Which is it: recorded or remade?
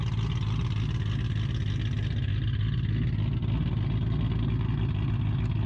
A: recorded